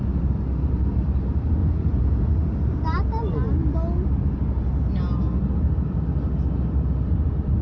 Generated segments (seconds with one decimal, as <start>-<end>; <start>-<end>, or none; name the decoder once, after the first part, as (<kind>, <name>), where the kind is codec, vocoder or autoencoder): 1.6-2.3 (vocoder, Vocos)